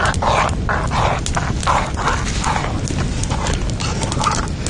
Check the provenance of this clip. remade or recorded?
recorded